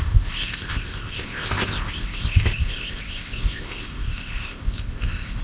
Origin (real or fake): fake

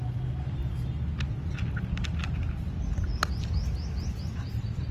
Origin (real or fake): real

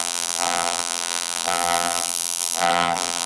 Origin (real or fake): fake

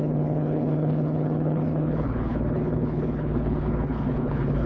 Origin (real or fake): fake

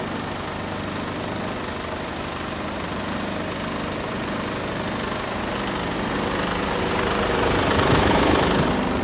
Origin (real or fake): real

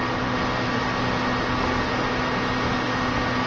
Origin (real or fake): fake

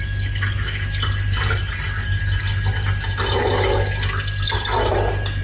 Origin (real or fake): real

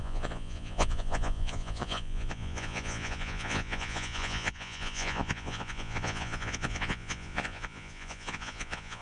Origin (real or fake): fake